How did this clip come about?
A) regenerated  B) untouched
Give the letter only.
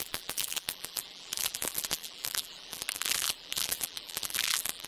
A